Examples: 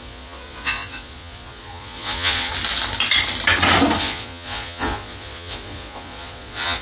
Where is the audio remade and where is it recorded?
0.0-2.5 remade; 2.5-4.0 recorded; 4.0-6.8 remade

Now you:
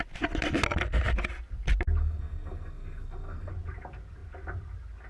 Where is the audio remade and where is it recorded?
0.0-2.0 recorded; 2.0-3.5 remade; 3.5-5.1 recorded

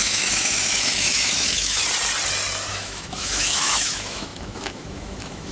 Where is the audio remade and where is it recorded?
0.0-1.8 remade; 1.8-2.7 recorded; 2.7-5.5 remade

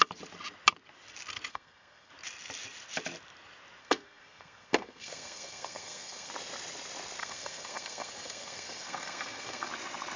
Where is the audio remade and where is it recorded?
0.0-1.5 recorded; 1.5-2.1 remade; 2.1-3.8 recorded; 3.8-6.3 remade; 6.3-7.2 recorded; 7.2-9.7 remade; 9.7-10.2 recorded

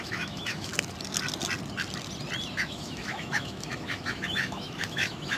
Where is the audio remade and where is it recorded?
0.0-0.7 remade; 0.7-2.5 recorded; 2.5-5.4 remade